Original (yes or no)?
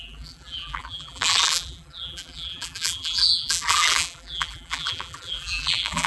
no